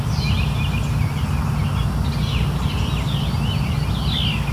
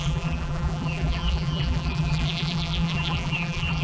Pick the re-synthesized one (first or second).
second